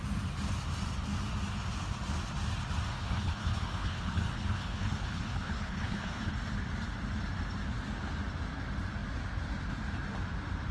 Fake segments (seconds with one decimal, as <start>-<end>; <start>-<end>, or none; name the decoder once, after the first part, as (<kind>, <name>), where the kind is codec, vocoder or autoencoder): 2.9-6.3 (codec, HILCodec)